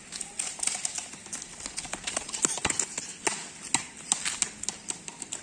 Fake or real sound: real